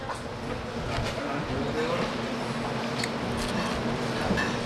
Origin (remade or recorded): recorded